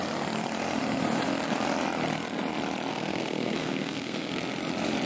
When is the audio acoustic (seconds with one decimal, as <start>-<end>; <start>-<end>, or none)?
0.0-2.9; 4.4-5.1